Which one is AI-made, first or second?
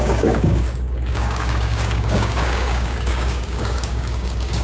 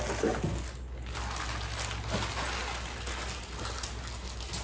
first